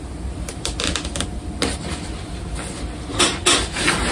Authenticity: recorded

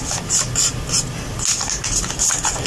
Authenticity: recorded